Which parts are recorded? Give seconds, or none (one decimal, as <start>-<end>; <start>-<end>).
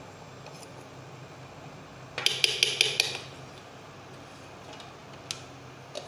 0.0-6.1